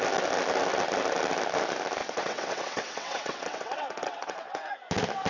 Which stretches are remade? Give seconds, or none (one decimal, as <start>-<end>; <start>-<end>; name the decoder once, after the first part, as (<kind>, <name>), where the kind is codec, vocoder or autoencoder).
2.0-4.7 (vocoder, WaveNeXt)